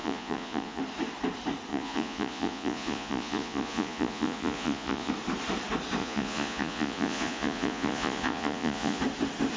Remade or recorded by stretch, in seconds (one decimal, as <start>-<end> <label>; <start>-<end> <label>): 0.0-0.8 remade; 0.8-1.7 recorded; 1.7-5.1 remade; 5.1-6.0 recorded; 6.0-9.0 remade; 9.0-9.6 recorded